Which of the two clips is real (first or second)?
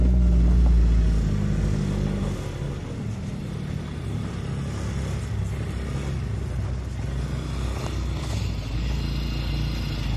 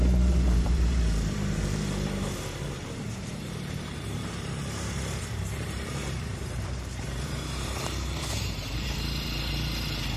first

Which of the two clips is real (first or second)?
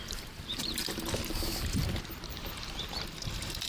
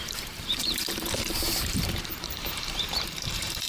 first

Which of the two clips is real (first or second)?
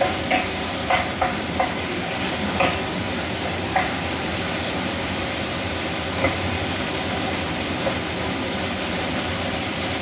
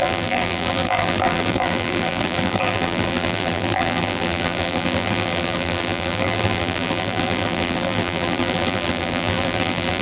first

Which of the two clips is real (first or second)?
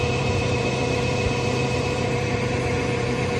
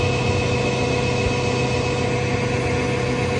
second